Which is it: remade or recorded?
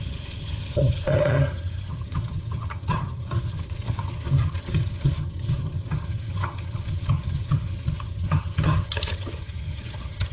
remade